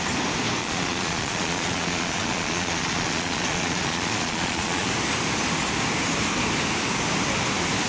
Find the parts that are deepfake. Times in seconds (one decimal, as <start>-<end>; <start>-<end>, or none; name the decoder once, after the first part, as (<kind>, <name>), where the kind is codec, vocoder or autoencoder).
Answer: 0.6-4.9 (vocoder, Vocos)